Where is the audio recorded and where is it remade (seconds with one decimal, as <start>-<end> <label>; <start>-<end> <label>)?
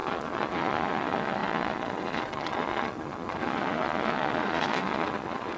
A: 0.0-5.6 remade